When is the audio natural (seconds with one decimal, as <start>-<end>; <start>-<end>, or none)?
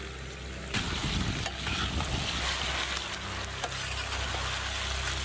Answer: 0.0-5.2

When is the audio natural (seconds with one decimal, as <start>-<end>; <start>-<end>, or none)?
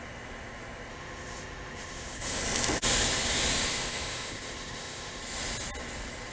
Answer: 0.0-0.9; 2.4-3.7; 5.2-6.3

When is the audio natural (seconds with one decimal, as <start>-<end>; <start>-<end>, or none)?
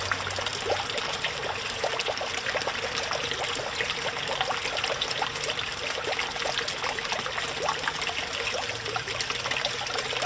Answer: 0.0-10.3